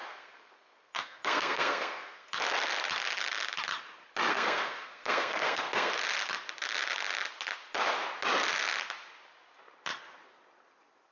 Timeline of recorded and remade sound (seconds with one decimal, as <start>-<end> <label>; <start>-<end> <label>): 0.0-2.4 remade; 2.4-4.3 recorded; 4.3-5.9 remade; 5.9-11.1 recorded